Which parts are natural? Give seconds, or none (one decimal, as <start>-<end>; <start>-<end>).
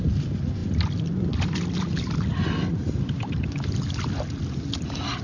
0.0-2.7; 3.4-5.2